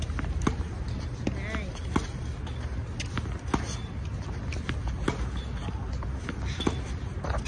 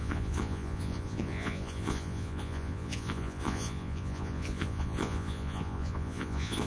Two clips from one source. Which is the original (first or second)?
first